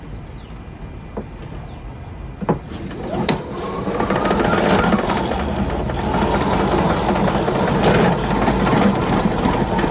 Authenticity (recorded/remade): recorded